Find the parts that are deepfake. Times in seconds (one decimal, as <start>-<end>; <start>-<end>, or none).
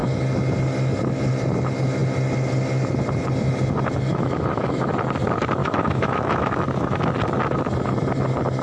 4.1-4.9; 5.6-7.0